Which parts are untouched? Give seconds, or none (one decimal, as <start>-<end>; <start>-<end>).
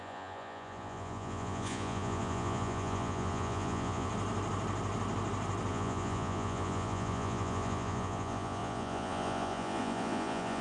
4.1-5.7